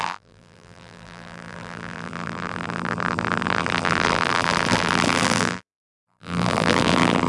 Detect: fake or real fake